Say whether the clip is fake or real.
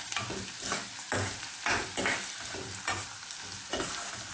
real